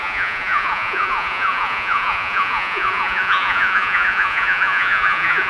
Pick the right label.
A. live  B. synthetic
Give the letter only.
B